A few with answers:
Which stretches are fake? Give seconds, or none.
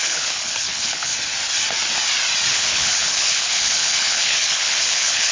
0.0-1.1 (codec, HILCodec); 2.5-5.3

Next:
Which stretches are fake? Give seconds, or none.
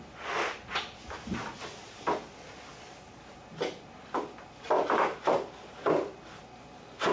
none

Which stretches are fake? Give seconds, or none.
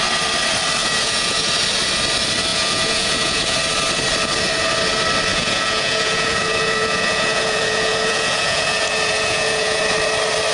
0.8-1.5 (vocoder, Vocos); 2.5-3.6; 5.3-9.8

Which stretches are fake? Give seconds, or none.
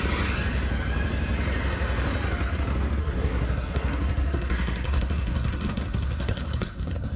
3.0-7.2 (codec, SNAC)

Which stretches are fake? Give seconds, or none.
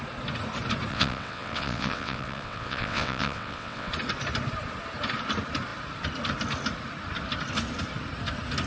0.9-3.9 (vocoder, WaveNeXt)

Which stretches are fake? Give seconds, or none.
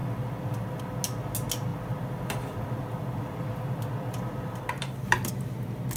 0.0-0.8 (vocoder, BigVGAN v2); 1.7-5.3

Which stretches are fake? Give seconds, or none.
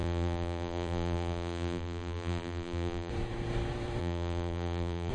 0.0-3.1 (vocoder, BigVGAN v2); 4.0-5.1